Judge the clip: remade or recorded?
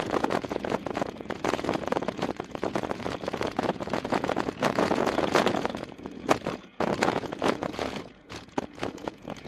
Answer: remade